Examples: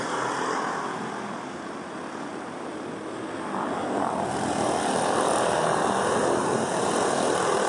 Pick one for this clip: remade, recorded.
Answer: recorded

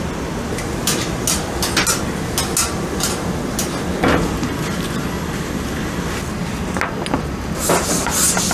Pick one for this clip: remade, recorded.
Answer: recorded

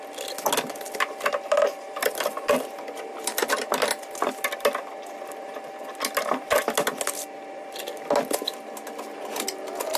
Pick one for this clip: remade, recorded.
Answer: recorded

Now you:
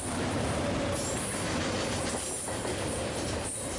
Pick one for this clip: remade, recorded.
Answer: remade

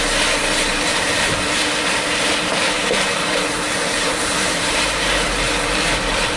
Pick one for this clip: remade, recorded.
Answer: remade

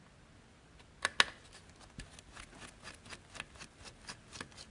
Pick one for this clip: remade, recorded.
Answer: recorded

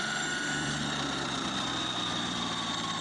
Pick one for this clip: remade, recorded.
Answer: remade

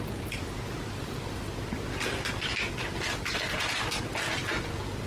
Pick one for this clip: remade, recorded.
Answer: recorded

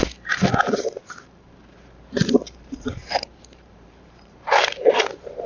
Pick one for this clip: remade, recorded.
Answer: remade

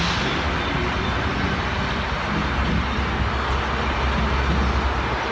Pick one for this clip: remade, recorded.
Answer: recorded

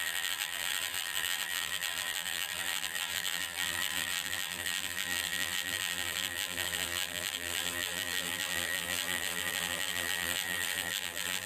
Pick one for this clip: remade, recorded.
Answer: remade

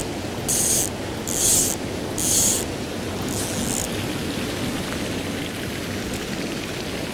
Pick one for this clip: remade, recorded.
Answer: recorded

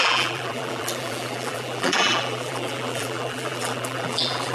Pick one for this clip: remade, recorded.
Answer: remade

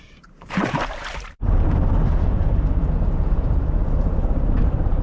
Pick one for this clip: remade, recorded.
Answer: remade